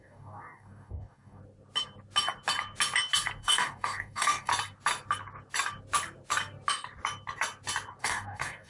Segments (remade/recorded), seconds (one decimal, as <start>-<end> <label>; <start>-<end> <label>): 0.0-1.4 remade; 1.4-3.4 recorded; 3.4-4.5 remade; 4.5-8.0 recorded; 8.0-8.7 remade

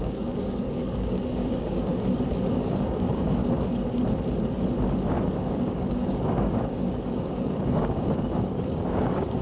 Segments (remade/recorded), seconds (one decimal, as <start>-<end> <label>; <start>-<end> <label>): 0.0-1.9 remade; 1.9-2.5 recorded; 2.5-3.4 remade; 3.4-5.5 recorded; 5.5-9.4 remade

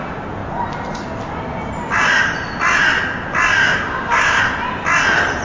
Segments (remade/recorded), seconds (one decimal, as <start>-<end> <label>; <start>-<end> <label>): 0.0-3.6 recorded; 3.6-4.4 remade; 4.4-5.4 recorded

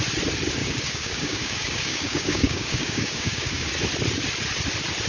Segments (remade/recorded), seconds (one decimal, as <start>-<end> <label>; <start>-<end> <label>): 0.0-0.6 recorded; 0.6-3.7 remade; 3.7-5.1 recorded

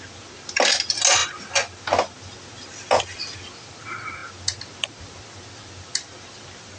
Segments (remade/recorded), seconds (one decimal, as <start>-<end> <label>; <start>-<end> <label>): 0.0-6.8 recorded